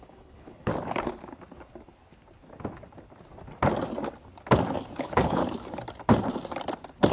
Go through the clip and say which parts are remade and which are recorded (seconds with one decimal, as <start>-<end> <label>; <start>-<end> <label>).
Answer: 0.0-0.7 remade; 0.7-5.0 recorded; 5.0-5.4 remade; 5.4-7.1 recorded